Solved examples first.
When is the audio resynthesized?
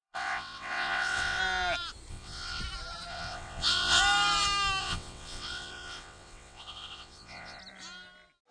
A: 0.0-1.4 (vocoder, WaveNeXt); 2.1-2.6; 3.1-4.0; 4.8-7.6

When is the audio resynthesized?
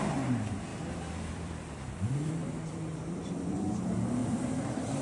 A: 0.7-3.7 (vocoder, BigVGAN v2); 4.2-5.0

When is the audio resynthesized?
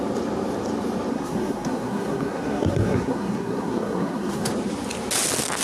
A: 1.1-4.5 (codec, SNAC)